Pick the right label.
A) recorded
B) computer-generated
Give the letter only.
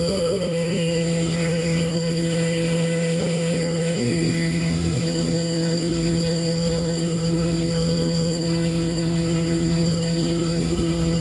B